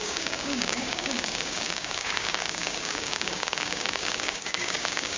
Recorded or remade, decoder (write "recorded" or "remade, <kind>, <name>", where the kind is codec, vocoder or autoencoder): remade, codec, DAC